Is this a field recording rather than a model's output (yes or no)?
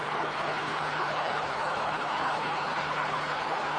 no